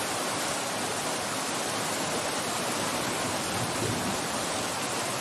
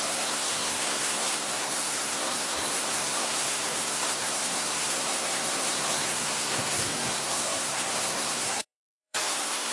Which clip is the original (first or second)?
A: first